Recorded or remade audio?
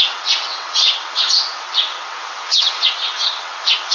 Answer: remade